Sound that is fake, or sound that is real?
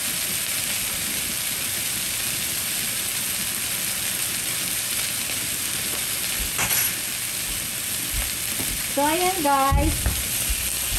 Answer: real